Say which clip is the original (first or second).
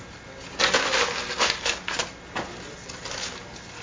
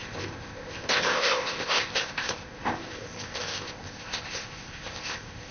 first